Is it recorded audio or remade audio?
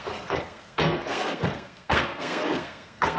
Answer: remade